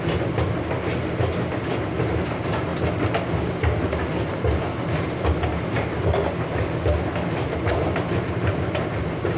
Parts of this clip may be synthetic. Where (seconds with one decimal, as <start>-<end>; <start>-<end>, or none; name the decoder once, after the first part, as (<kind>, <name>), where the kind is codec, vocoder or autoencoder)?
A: 0.0-0.9 (vocoder, BigVGAN v2); 2.0-2.7; 7.3-9.4